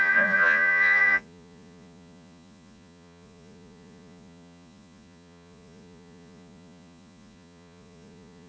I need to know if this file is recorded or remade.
remade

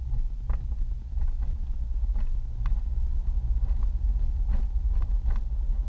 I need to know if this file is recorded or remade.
recorded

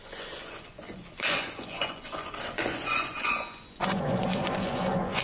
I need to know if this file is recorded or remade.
remade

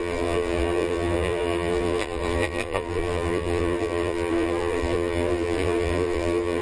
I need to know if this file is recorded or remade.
remade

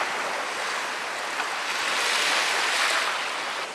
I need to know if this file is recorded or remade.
recorded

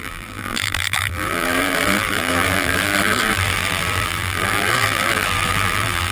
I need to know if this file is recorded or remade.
remade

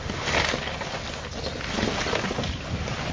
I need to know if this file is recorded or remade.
recorded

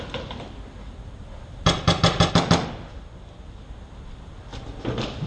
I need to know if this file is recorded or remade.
recorded